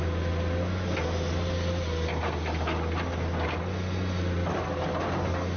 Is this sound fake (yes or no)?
no